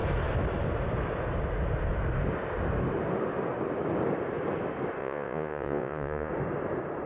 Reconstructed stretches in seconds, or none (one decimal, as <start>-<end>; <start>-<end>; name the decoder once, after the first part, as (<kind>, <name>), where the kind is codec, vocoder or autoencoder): 5.0-6.3 (vocoder, Vocos)